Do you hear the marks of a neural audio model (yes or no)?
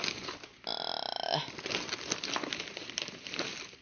no